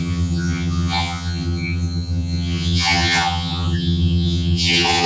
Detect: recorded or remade remade